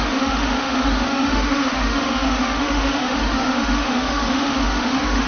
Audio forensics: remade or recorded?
remade